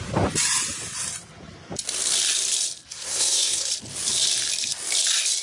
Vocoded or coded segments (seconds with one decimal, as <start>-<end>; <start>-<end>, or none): 2.9-3.7